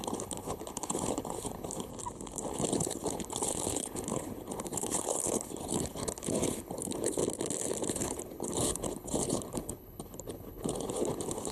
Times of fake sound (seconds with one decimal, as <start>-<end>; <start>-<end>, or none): 0.0-1.9; 2.5-7.2; 7.9-11.5